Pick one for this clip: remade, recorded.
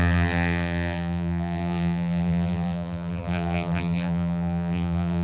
remade